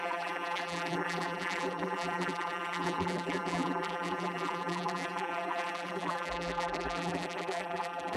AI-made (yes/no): yes